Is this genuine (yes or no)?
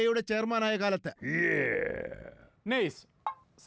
yes